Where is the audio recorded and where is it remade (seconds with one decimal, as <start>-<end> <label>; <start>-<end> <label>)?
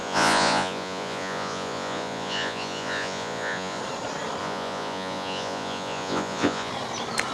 0.0-3.8 remade; 3.8-4.4 recorded; 4.4-6.7 remade; 6.7-7.3 recorded